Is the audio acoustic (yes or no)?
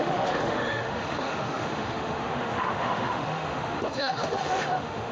no